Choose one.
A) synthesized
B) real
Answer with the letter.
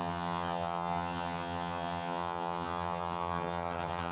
A